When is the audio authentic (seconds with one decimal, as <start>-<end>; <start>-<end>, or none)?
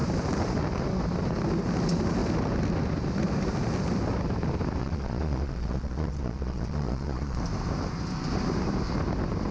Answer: 0.0-4.8; 7.4-9.5